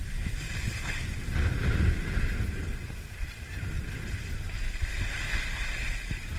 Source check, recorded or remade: recorded